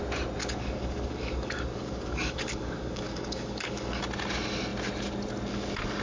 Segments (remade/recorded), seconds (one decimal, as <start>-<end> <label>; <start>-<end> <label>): 0.0-0.4 recorded; 0.4-4.0 remade; 4.0-6.0 recorded